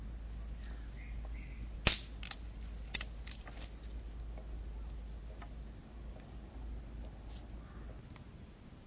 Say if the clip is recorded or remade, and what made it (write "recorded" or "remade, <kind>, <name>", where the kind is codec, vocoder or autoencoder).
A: recorded